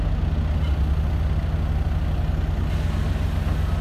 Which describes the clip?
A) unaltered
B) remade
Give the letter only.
A